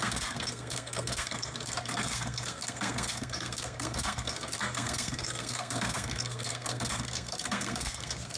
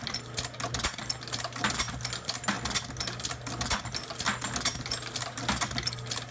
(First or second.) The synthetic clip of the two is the first